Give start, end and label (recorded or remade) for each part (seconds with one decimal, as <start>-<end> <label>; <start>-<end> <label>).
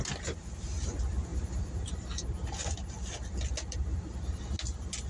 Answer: 0.0-5.1 recorded